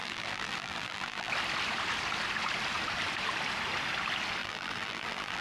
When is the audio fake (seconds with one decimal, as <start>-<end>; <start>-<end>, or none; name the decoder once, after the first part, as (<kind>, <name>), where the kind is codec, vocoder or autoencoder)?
0.0-1.3 (vocoder, BigVGAN v2); 4.4-5.4